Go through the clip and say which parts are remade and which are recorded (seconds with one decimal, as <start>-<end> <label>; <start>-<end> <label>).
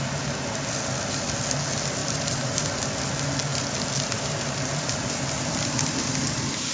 0.0-2.0 recorded; 2.0-2.7 remade; 2.7-3.5 recorded; 3.5-6.7 remade